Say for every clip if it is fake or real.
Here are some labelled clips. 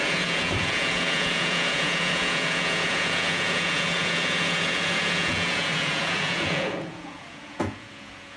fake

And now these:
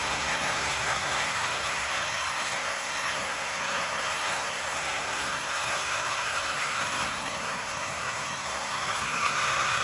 fake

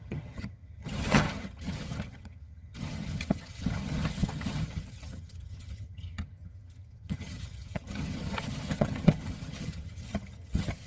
fake